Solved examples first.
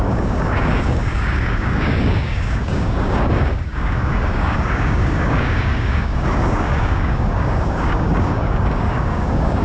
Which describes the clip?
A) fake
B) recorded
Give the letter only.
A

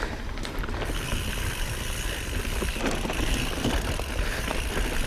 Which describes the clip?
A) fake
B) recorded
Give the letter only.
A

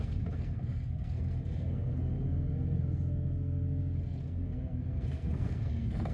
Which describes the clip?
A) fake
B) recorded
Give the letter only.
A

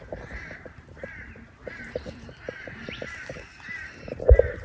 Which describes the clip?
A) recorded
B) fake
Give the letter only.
B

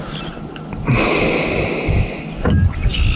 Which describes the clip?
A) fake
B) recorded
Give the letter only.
B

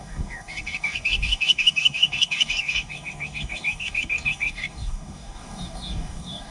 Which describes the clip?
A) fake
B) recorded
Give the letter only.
A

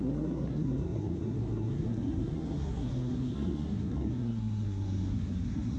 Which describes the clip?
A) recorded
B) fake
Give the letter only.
B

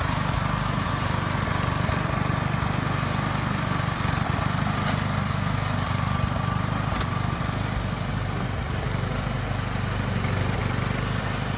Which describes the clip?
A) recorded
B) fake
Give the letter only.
A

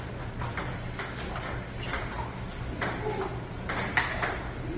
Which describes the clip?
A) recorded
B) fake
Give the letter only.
A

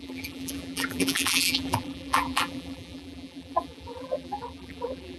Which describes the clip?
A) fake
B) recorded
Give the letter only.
A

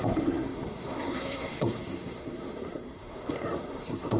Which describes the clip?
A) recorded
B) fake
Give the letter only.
B